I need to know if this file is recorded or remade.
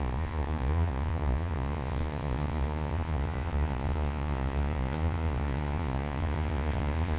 remade